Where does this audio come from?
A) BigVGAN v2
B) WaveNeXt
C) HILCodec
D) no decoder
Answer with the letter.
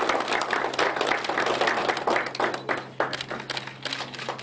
D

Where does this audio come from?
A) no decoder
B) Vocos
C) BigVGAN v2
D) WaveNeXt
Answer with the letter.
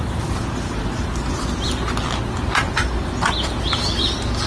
A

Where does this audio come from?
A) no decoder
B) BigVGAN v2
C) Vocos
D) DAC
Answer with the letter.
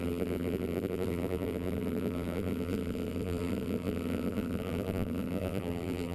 B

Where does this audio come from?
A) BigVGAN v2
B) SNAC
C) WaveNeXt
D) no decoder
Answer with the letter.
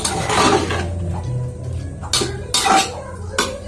D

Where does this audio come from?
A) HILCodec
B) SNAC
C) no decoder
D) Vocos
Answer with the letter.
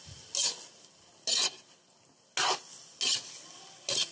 C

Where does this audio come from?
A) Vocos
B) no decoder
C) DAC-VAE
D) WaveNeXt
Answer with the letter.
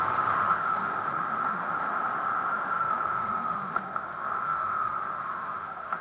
C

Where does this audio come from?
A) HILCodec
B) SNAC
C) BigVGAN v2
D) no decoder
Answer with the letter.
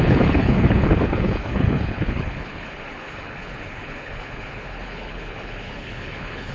A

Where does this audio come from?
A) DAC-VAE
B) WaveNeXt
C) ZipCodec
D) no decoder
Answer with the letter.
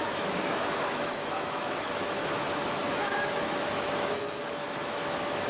A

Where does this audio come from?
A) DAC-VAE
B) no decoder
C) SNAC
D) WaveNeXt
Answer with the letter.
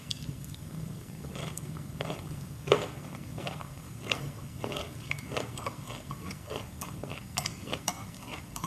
C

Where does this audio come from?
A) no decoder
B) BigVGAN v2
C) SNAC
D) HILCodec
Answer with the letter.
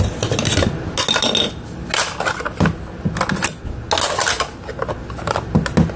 A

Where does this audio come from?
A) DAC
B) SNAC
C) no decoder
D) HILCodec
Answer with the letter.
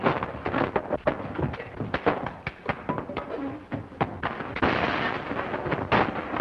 C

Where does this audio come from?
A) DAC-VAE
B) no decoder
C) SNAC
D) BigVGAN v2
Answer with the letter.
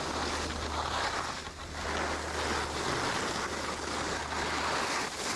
B